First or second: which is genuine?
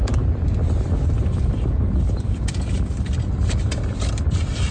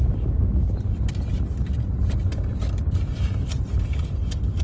second